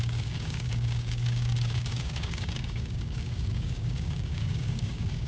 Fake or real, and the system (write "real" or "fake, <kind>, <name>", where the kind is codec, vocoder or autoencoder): fake, codec, DAC